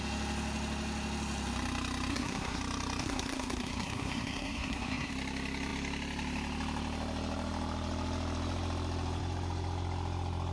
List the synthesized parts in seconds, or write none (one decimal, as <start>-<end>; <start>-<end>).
2.1-2.6; 3.0-5.1